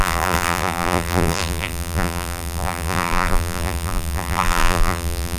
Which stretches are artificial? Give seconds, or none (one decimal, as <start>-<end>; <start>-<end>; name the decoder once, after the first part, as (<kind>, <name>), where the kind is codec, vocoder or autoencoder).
0.0-5.4 (vocoder, BigVGAN v2)